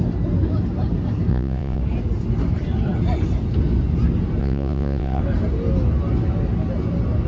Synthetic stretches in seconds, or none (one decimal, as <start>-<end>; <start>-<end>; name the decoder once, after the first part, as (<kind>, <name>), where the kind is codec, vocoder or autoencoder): 1.3-1.8 (vocoder, WaveNeXt); 4.4-5.2